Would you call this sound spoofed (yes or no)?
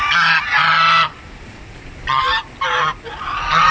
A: no